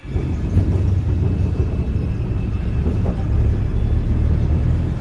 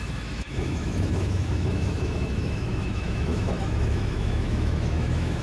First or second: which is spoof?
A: second